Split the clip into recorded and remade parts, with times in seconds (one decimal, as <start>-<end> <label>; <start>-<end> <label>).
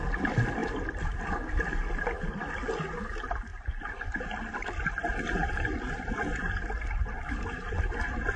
0.0-0.6 recorded; 0.6-2.0 remade; 2.0-8.4 recorded